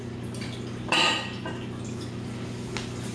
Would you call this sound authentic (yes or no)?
yes